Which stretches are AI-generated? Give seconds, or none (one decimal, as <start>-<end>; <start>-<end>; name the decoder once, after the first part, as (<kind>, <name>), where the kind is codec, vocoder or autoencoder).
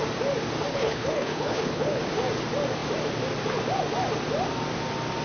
0.7-2.0 (codec, HILCodec)